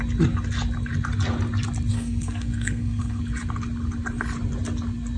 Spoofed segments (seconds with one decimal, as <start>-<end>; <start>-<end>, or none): 1.9-3.2